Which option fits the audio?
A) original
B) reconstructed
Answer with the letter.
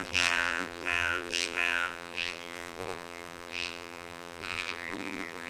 B